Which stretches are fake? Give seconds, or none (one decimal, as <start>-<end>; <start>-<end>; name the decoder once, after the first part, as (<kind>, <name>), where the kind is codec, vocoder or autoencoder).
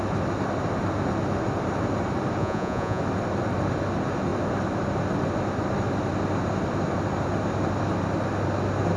2.4-3.0 (vocoder, Vocos)